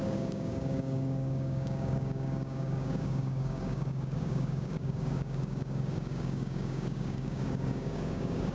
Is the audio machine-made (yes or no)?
yes